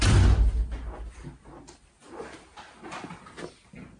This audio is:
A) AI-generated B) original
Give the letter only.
B